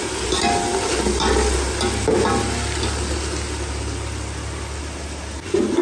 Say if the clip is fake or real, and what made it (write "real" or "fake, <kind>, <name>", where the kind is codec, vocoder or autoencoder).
real